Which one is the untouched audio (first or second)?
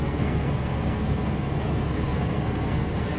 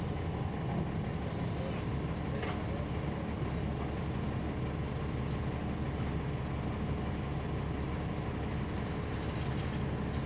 second